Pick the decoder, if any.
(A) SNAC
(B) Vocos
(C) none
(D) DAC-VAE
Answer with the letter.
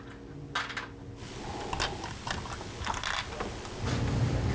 C